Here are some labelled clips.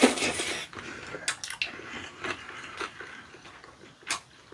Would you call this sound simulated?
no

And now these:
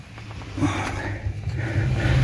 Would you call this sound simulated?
no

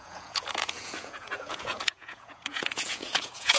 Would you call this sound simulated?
yes